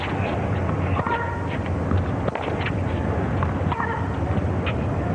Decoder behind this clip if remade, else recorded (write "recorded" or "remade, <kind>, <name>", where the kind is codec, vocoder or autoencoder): recorded